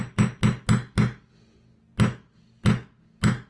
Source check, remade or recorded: recorded